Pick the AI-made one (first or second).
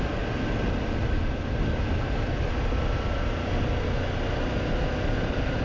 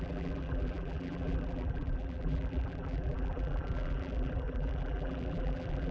second